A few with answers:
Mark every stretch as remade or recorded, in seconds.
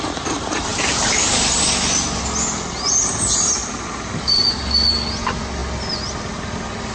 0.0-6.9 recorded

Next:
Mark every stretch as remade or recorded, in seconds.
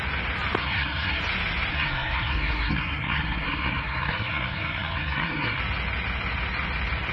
0.0-0.6 recorded; 0.6-1.2 remade; 1.2-1.7 recorded; 1.7-5.6 remade; 5.6-7.1 recorded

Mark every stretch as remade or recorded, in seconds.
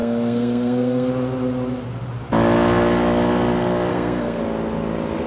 0.0-1.1 remade; 1.1-3.9 recorded; 3.9-4.4 remade; 4.4-5.3 recorded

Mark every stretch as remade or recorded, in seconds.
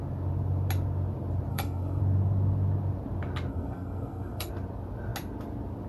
0.0-1.5 recorded; 1.5-2.0 remade; 2.0-3.5 recorded; 3.5-4.5 remade; 4.5-5.9 recorded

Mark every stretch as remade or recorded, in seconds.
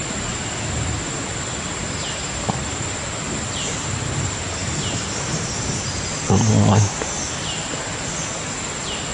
0.0-9.1 recorded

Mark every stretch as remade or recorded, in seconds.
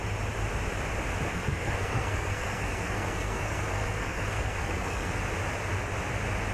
0.0-1.3 recorded; 1.3-5.2 remade; 5.2-6.5 recorded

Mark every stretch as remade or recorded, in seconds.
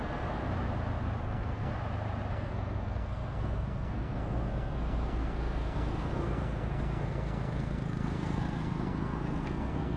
0.0-0.4 remade; 0.4-1.2 recorded; 1.2-1.7 remade; 1.7-2.3 recorded; 2.3-10.0 remade